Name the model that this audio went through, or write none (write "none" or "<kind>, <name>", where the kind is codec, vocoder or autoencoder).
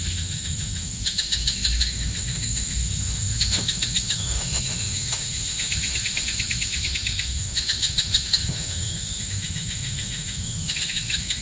autoencoder, DAC-VAE